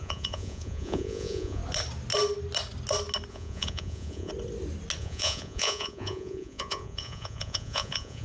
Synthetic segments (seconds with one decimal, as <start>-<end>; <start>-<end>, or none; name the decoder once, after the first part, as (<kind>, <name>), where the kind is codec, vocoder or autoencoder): 0.0-1.6 (vocoder, Vocos); 3.3-4.3; 5.0-8.2